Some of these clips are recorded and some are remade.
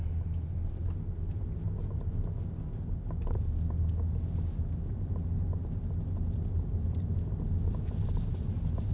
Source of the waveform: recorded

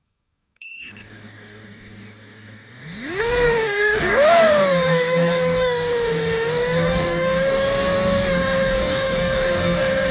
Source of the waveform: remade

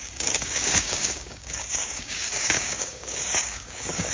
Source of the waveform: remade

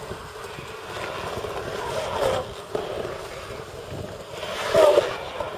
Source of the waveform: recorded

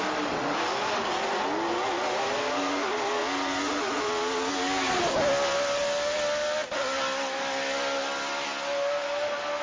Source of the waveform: recorded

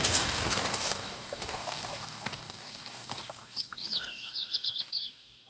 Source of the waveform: remade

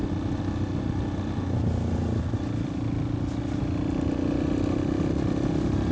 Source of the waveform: recorded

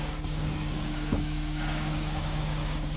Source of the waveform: remade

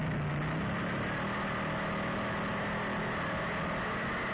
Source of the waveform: recorded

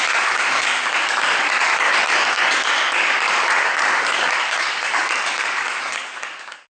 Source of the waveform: remade